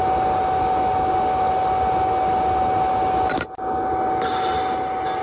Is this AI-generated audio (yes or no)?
no